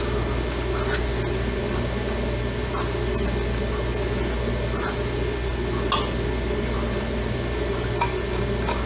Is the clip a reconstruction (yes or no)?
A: no